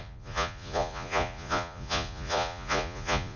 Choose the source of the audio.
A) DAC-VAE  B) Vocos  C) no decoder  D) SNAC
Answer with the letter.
B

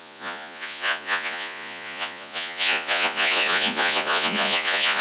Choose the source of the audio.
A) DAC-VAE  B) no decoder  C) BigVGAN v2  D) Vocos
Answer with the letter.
D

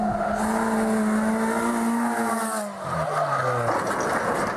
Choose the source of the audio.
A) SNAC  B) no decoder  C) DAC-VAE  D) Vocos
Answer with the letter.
B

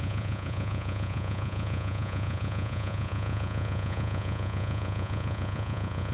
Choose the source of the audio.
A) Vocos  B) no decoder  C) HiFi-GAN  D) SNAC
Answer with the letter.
A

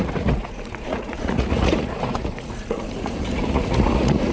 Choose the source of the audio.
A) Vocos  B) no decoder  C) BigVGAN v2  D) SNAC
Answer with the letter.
A